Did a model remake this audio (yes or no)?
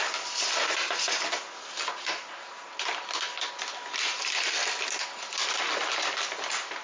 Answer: no